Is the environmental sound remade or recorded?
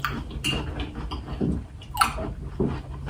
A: recorded